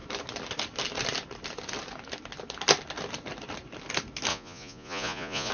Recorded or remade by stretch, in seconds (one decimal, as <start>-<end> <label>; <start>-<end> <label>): 0.0-4.3 recorded; 4.3-5.5 remade